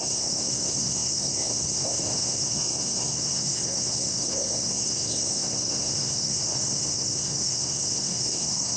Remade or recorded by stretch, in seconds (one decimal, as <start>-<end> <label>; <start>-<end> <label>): 0.0-8.8 remade